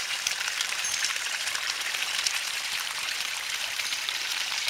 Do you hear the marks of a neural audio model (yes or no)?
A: yes